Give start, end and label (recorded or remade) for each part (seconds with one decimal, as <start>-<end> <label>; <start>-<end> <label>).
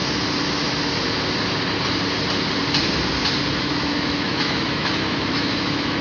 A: 0.0-3.6 recorded; 3.6-6.0 remade